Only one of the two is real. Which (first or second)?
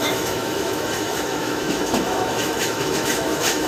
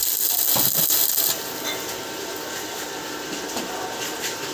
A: second